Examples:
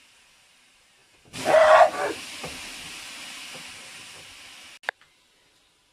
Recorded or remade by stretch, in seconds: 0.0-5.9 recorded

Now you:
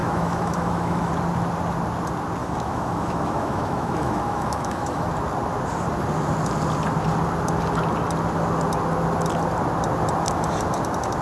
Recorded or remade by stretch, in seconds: 0.0-1.1 remade; 1.1-2.4 recorded; 2.4-5.1 remade; 5.1-11.2 recorded

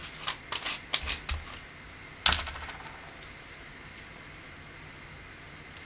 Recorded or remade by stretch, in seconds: 0.0-5.9 recorded

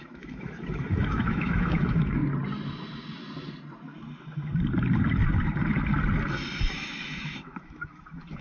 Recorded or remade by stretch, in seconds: 0.0-2.2 remade; 2.2-6.7 recorded; 6.7-8.4 remade

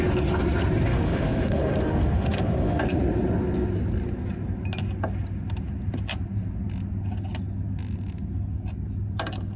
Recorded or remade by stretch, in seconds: 0.0-0.9 recorded; 0.9-2.8 remade; 2.8-9.6 recorded

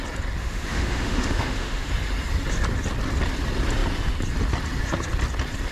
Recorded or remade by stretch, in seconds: 0.0-0.4 recorded; 0.4-1.9 remade; 1.9-5.7 recorded